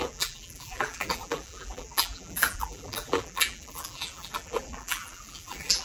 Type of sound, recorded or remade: remade